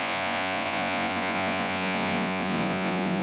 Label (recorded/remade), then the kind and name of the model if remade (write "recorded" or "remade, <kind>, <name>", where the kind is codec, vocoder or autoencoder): remade, vocoder, Vocos